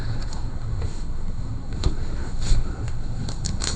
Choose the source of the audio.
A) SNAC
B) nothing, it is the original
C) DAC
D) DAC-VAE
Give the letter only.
A